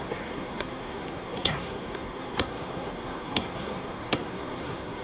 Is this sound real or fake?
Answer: fake